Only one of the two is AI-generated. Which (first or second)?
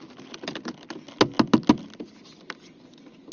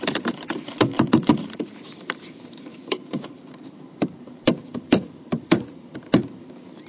second